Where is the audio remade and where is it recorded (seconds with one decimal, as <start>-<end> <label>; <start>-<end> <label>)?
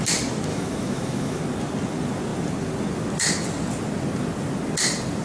0.0-0.5 recorded; 0.5-1.4 remade; 1.4-5.2 recorded